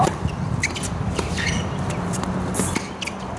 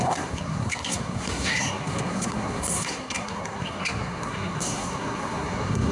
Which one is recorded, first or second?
first